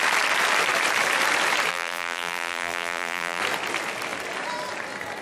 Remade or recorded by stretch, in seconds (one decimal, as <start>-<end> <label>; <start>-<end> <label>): 0.0-1.7 recorded; 1.7-3.4 remade; 3.4-5.2 recorded